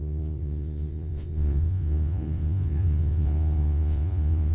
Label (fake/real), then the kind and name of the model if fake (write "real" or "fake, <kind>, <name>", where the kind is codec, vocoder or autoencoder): fake, vocoder, Vocos